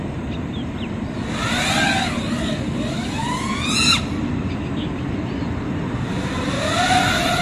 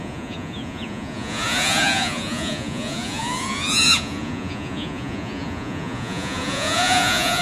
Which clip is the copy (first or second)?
second